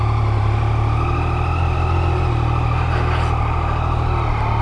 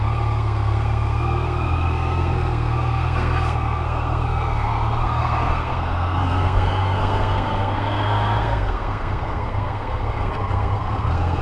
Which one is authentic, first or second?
first